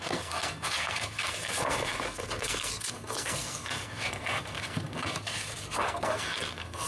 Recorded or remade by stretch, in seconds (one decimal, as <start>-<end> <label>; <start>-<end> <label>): 0.0-6.9 remade